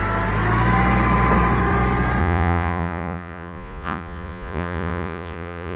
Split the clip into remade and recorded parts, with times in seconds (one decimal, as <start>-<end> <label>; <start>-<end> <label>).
0.0-2.2 recorded; 2.2-5.8 remade